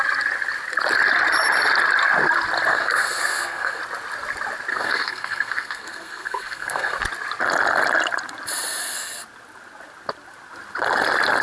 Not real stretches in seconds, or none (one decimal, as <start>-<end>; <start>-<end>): 2.7-3.8; 4.7-7.0